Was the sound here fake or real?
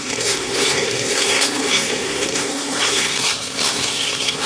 fake